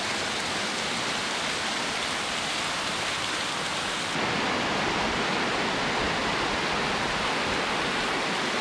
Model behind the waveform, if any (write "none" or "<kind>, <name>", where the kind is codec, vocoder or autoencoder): none